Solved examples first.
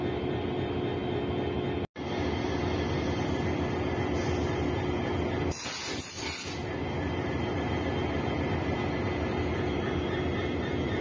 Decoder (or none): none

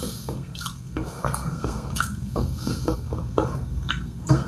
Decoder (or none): codec, SNAC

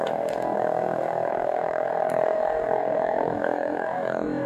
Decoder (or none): codec, DAC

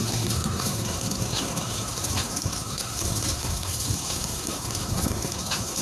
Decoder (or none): codec, SNAC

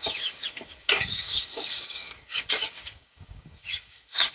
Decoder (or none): codec, DAC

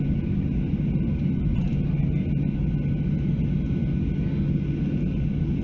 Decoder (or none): none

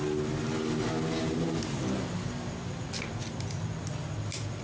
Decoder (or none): none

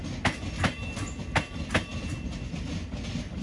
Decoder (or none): none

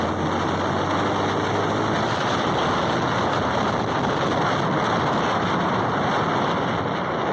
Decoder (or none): none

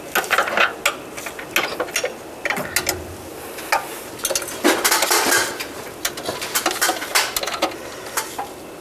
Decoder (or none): none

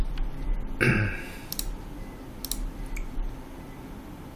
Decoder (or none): none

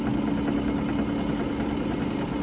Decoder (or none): none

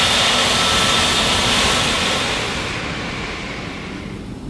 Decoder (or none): none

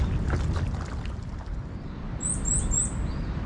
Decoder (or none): none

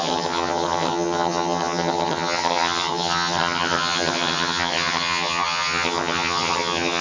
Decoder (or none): vocoder, HiFi-GAN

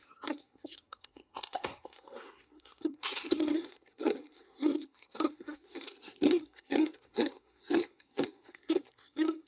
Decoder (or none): codec, SNAC